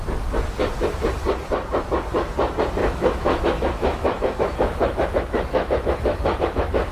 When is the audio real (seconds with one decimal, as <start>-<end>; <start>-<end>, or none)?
0.0-2.8